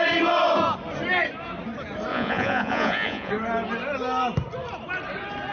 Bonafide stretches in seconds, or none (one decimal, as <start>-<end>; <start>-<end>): 0.0-2.1; 3.3-5.5